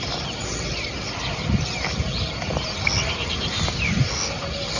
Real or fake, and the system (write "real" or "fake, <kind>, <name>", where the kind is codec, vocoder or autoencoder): real